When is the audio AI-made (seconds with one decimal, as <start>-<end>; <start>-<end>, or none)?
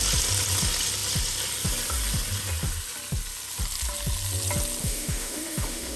4.8-6.0